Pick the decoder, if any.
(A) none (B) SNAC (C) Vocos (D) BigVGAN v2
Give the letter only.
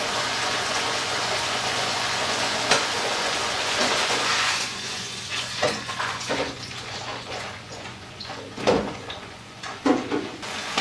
C